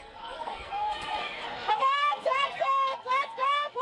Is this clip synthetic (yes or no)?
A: yes